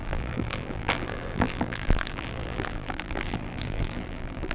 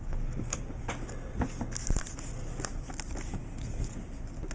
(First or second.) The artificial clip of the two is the first